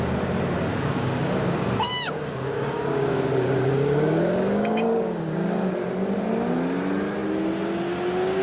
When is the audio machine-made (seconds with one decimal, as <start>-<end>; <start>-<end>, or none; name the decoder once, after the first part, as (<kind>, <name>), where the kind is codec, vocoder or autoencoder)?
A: 0.7-5.7 (codec, DAC)